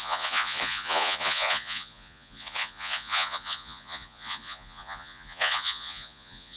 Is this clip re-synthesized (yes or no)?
yes